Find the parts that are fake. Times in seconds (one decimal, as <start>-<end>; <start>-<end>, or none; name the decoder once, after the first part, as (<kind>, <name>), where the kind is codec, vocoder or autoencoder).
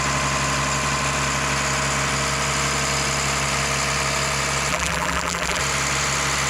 4.7-5.6 (vocoder, BigVGAN v2)